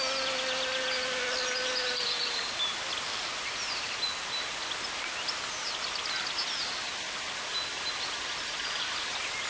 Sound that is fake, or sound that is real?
real